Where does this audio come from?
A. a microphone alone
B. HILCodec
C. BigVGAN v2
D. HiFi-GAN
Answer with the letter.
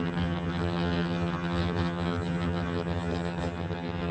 D